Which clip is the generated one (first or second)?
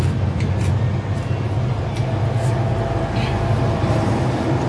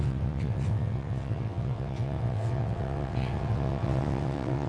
second